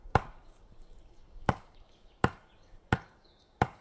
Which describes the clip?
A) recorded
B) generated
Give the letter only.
B